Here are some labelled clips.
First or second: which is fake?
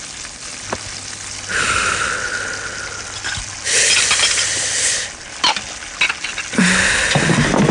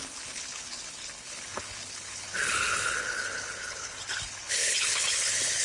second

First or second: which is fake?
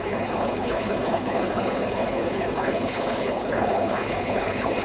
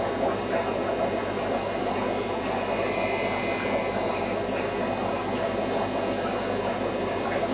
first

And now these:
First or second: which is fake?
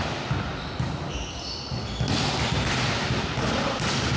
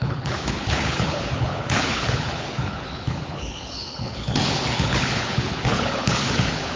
second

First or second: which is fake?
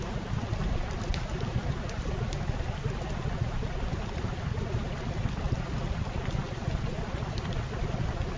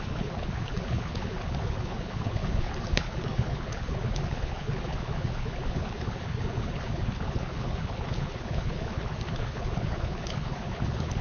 second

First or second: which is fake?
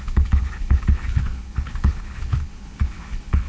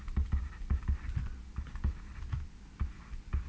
first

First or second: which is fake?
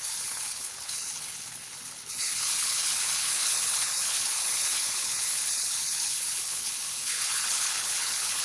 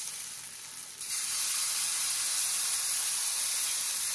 first